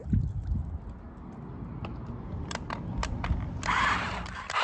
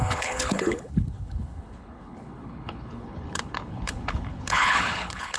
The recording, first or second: first